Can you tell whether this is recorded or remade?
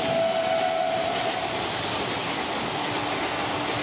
recorded